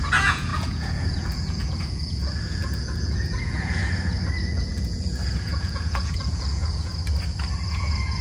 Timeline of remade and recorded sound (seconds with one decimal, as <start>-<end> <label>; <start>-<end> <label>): 0.0-3.8 remade; 3.8-4.5 recorded; 4.5-6.9 remade; 6.9-7.7 recorded; 7.7-8.2 remade